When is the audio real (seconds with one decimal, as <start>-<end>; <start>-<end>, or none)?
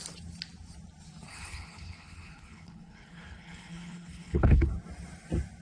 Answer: 0.0-1.3; 4.7-5.6